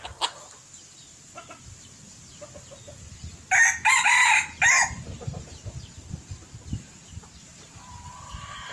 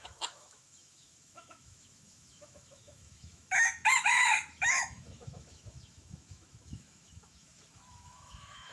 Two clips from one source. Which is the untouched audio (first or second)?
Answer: first